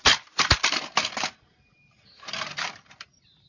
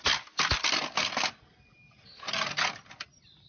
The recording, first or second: second